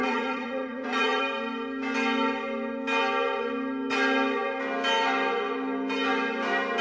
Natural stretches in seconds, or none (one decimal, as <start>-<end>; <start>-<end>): 1.2-6.8